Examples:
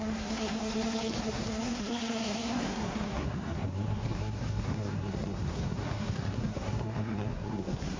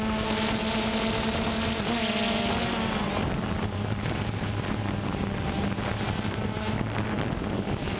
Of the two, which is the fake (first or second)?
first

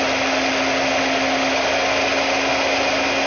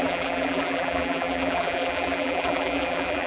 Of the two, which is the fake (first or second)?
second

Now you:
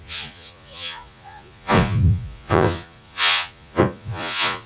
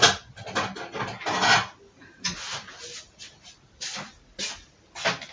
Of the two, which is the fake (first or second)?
first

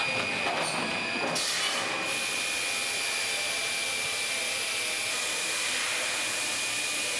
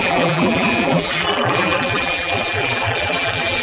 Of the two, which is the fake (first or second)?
second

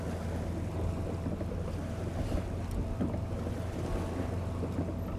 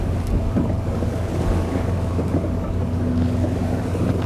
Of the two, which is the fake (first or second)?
second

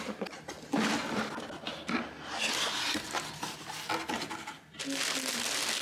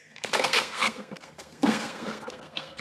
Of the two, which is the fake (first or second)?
second